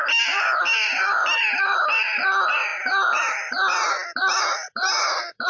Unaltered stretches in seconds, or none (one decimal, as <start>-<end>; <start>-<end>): 0.0-5.5